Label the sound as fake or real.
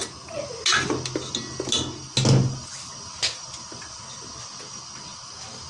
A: real